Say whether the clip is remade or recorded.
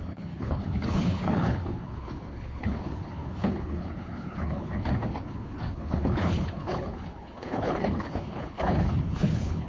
remade